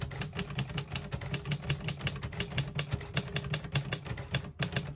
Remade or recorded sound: recorded